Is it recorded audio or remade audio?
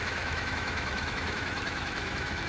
remade